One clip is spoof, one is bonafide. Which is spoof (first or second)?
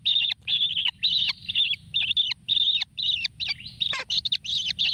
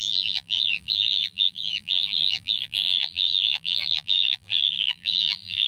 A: second